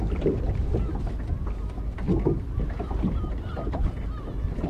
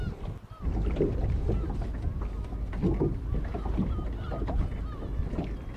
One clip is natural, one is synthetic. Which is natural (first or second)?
second